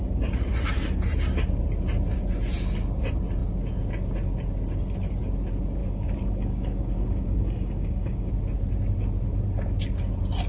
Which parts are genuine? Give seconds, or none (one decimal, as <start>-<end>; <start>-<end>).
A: 0.0-5.8; 8.3-10.5